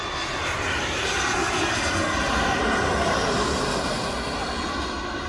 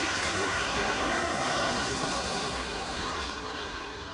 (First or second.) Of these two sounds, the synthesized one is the second